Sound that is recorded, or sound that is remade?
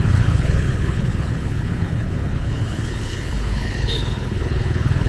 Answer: remade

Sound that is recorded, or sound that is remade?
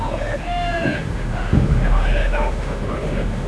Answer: remade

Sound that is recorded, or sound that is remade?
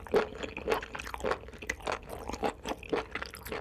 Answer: recorded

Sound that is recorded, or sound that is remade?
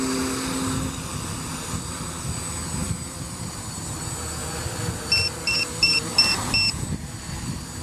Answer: recorded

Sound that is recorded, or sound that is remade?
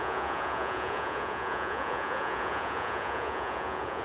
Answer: remade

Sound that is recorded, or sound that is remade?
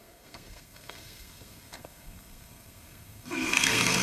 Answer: remade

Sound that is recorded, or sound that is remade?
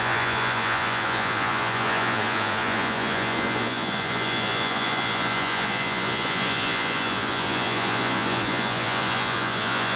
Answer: remade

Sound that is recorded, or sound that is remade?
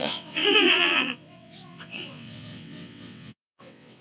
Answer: remade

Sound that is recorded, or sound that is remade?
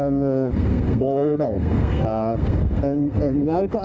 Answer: remade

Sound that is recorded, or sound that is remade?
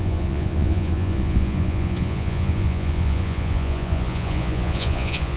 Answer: remade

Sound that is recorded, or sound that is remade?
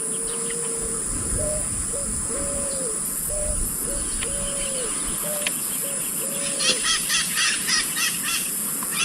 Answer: remade